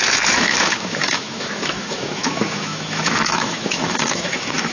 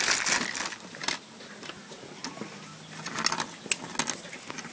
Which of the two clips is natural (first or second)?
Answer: second